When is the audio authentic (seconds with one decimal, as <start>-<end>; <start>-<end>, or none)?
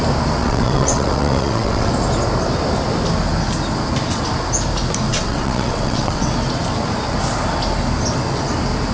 0.0-0.4; 1.9-5.1; 6.3-8.9